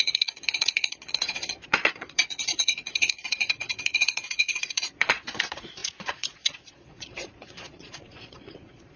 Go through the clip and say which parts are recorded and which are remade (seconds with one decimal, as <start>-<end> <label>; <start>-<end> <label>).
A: 0.0-9.0 remade